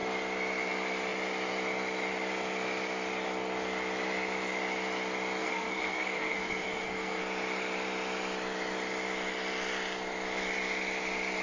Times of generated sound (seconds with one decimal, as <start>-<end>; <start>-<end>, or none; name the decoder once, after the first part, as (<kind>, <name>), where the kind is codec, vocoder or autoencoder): 5.4-7.2 (codec, SNAC)

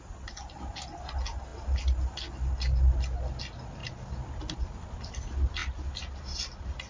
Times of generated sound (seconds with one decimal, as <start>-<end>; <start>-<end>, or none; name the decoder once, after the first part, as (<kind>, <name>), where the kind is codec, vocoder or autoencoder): none